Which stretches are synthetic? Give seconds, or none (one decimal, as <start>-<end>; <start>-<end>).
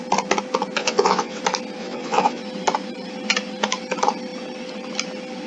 0.8-1.4; 1.8-2.4